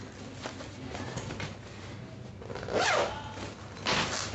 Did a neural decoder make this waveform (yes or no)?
no